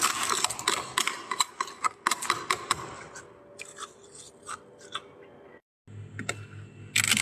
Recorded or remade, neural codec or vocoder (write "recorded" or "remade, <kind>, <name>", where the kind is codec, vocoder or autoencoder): recorded